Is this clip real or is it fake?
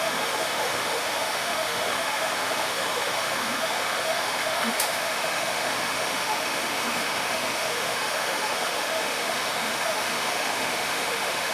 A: fake